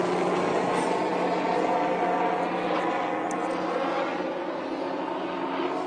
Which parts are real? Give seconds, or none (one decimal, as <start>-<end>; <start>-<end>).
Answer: 0.0-5.9